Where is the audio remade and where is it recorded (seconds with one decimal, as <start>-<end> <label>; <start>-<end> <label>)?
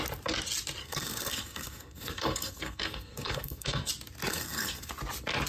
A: 0.0-0.8 recorded; 0.8-3.9 remade; 3.9-4.3 recorded; 4.3-4.9 remade; 4.9-5.5 recorded